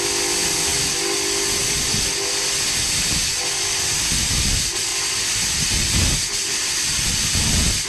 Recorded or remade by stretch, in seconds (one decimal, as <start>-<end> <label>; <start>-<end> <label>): 0.0-7.9 recorded